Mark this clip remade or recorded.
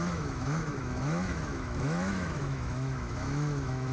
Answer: remade